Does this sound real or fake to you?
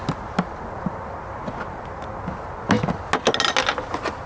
real